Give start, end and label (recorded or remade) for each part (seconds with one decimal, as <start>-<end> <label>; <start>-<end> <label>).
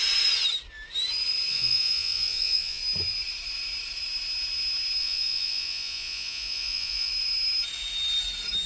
0.0-1.5 recorded; 1.5-2.8 remade; 2.8-5.0 recorded; 5.0-7.1 remade; 7.1-8.7 recorded